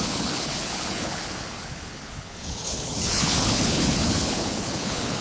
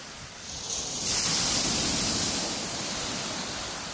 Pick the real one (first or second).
second